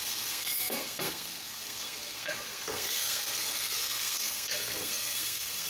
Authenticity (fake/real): fake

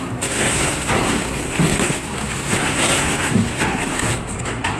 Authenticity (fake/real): fake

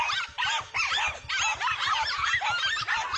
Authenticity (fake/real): real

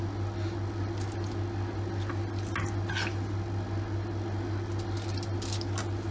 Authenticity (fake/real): real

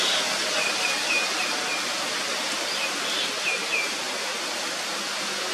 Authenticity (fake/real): real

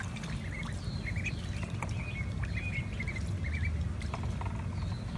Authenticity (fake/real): real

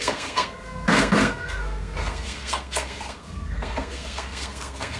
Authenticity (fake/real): fake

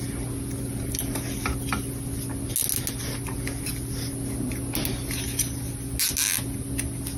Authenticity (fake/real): real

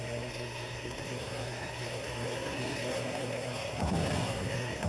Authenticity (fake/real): fake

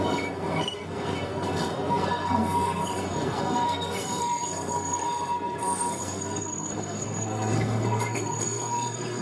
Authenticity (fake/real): fake